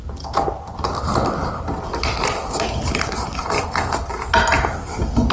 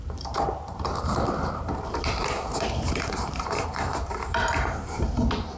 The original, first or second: first